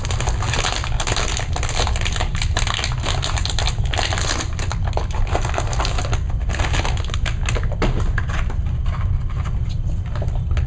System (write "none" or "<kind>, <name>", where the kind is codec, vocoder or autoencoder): none